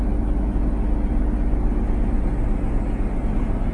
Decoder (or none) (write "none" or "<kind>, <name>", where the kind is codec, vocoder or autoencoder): none